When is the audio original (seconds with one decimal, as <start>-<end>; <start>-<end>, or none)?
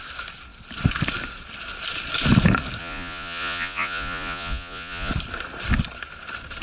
0.0-2.8; 5.1-6.6